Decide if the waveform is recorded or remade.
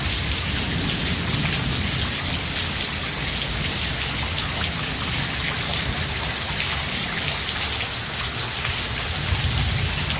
recorded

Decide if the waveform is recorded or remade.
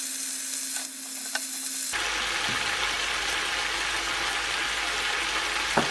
recorded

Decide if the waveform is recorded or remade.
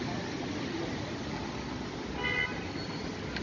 recorded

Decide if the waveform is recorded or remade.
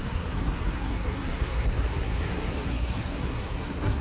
remade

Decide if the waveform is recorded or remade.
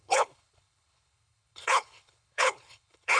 remade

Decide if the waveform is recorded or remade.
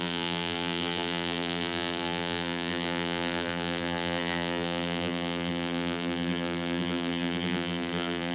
remade